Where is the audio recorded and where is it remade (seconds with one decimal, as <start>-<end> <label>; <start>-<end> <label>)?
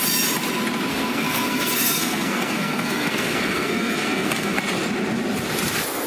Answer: 0.0-0.9 recorded; 0.9-4.6 remade; 4.6-6.1 recorded